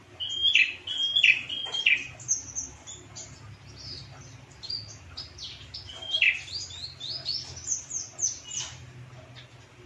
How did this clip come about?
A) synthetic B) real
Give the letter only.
B